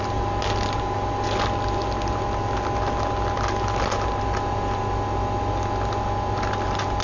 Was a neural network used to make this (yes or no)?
no